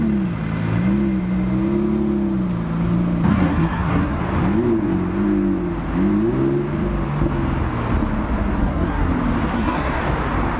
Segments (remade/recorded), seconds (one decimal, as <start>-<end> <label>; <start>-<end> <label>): 0.0-3.3 recorded; 3.3-4.2 remade; 4.2-8.6 recorded; 8.6-9.1 remade; 9.1-9.5 recorded; 9.5-10.0 remade; 10.0-10.6 recorded